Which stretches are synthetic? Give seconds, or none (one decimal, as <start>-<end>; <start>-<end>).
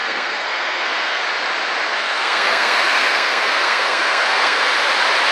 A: 0.0-1.2; 1.9-4.7